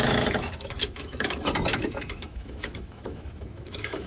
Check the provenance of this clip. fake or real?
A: fake